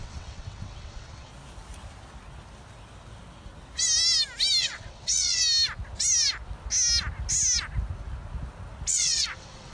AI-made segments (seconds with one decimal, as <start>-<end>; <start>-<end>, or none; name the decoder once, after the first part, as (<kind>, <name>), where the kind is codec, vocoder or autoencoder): 0.0-1.3 (vocoder, WaveNeXt); 4.6-5.4; 8.9-9.7